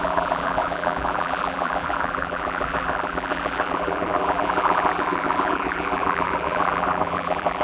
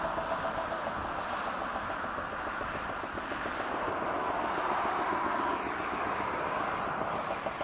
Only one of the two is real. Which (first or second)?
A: second